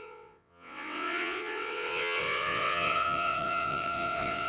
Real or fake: fake